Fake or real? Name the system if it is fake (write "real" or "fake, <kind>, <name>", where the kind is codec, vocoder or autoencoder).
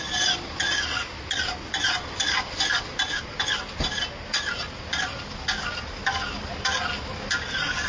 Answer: real